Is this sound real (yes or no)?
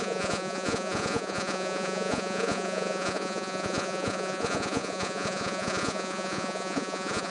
no